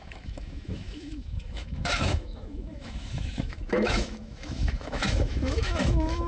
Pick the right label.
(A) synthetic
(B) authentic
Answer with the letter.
A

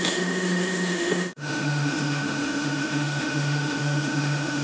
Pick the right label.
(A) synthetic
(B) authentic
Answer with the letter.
A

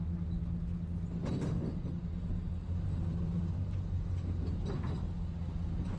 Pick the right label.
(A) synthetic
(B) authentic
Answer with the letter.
B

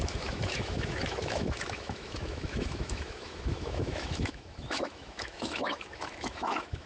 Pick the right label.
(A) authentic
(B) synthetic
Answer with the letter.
B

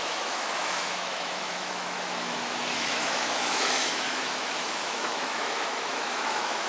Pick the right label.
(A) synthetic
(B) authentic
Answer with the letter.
A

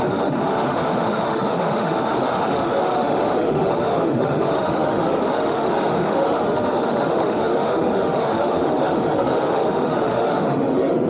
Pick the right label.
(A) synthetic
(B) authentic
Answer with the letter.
A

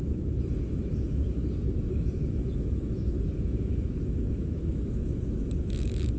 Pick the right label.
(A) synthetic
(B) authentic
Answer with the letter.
A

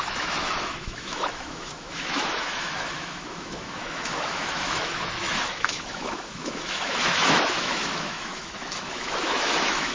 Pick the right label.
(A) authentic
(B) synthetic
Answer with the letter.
B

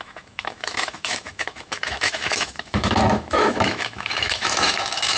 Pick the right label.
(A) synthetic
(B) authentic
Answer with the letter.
A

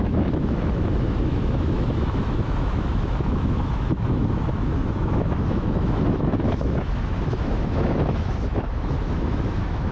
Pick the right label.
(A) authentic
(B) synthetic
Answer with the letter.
B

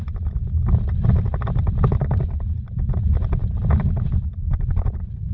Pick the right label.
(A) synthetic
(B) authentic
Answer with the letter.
B